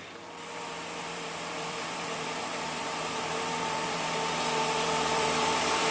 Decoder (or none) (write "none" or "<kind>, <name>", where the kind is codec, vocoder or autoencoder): vocoder, BigVGAN v2